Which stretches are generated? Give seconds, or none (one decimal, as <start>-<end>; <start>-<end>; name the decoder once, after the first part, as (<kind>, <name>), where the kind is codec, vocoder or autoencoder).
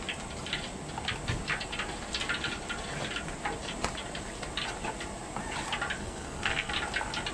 6.0-6.7 (codec, SNAC)